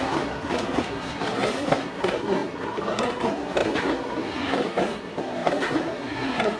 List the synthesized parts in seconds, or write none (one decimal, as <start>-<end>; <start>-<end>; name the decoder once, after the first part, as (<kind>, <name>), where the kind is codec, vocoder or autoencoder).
0.0-6.6 (codec, SNAC)

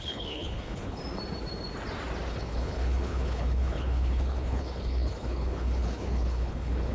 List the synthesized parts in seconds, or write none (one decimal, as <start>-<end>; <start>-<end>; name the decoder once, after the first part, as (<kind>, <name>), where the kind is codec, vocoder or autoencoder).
0.0-1.0 (codec, HILCodec); 2.3-6.9

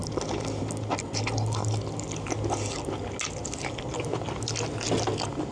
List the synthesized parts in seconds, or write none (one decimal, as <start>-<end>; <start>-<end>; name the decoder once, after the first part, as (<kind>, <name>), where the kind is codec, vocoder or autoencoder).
none

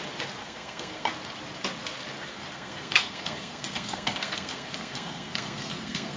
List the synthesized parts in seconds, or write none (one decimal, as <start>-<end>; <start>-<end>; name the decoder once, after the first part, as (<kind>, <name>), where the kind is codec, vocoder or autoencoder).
0.4-1.1 (codec, SNAC); 2.3-6.2

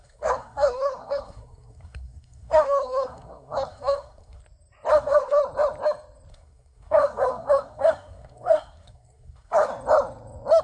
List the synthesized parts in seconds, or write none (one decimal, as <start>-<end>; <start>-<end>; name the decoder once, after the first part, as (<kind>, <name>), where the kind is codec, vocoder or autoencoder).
0.0-4.4 (codec, SNAC); 4.9-5.4; 6.3-9.7

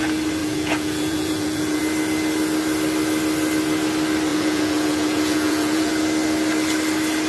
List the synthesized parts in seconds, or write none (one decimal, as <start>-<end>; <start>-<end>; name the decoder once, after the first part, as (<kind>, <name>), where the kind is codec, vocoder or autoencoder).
0.4-1.8 (vocoder, Vocos); 4.3-5.9

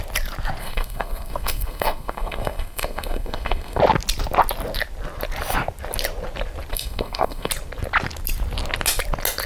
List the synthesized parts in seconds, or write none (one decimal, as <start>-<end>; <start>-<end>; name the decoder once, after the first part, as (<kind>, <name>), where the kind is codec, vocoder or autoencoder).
0.6-3.8 (codec, SNAC); 6.7-7.5

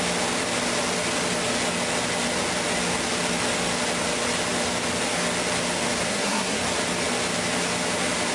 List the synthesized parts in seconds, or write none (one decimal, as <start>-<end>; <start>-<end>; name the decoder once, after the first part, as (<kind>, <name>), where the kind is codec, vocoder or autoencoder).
6.1-6.6 (codec, SNAC)